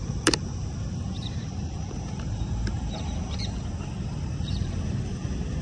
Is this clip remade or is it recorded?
remade